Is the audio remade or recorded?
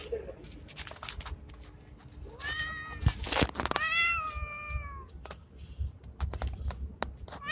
recorded